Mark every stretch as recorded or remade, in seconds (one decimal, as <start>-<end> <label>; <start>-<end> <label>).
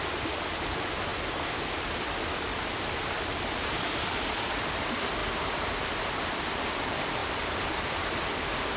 0.0-1.1 remade; 1.1-2.2 recorded; 2.2-5.2 remade; 5.2-6.1 recorded; 6.1-8.8 remade